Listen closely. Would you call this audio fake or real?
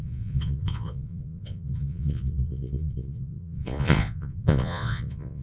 fake